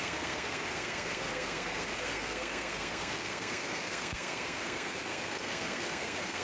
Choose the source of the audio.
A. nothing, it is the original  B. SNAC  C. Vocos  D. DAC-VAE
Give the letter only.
B